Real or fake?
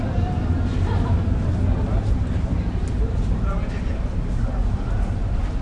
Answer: fake